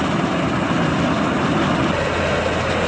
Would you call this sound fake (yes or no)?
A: no